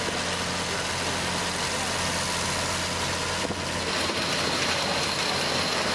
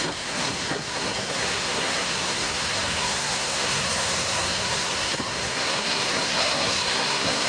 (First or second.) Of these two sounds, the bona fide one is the first